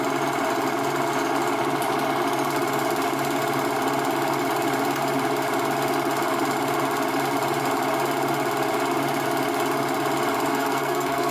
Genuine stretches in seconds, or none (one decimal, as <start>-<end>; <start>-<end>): 0.0-10.5